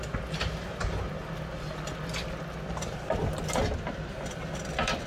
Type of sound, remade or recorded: recorded